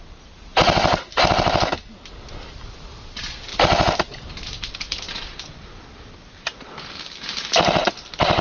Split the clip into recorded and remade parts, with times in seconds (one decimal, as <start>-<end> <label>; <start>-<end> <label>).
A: 0.0-8.4 recorded